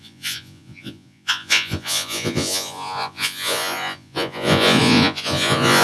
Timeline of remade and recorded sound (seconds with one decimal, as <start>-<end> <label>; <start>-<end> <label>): 0.0-5.8 remade